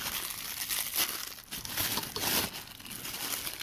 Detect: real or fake real